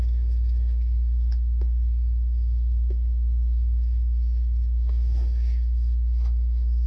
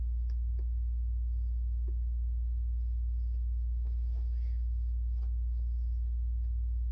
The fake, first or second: first